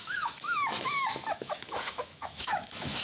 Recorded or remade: remade